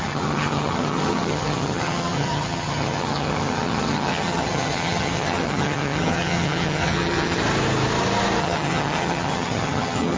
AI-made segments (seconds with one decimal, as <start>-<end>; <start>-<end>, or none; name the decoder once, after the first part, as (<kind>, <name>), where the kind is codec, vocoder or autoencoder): 0.0-7.4 (vocoder, HiFi-GAN); 8.4-10.2